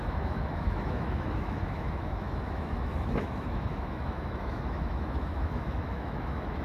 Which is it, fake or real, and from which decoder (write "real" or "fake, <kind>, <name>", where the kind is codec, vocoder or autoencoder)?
fake, autoencoder, DAC-VAE